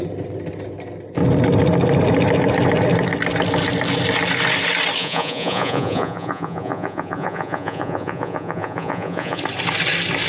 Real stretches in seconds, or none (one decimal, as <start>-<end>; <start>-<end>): 0.0-5.0; 9.4-10.3